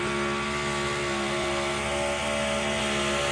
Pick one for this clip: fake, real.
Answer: real